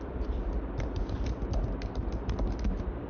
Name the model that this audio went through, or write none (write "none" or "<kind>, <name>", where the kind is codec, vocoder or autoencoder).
none